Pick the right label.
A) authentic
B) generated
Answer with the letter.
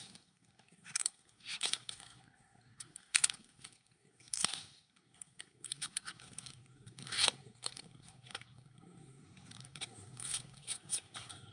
B